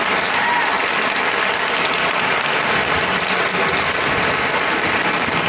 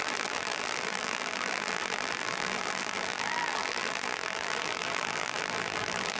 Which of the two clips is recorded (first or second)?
first